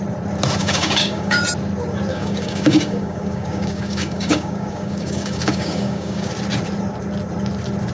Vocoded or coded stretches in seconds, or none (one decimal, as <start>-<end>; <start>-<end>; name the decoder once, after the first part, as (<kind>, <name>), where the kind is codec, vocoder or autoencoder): 0.6-1.4 (codec, DAC); 2.1-6.3